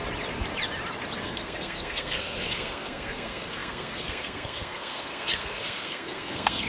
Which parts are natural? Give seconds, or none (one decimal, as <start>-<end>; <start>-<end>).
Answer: 0.0-1.2